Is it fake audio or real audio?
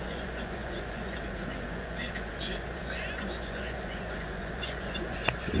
fake